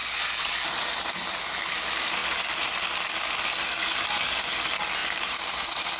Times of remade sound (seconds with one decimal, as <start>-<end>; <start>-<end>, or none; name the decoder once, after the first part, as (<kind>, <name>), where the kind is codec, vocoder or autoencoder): none